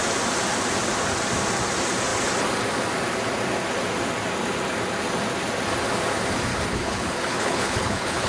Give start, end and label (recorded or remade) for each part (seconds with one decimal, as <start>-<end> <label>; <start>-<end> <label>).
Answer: 0.0-6.5 recorded; 6.5-8.3 remade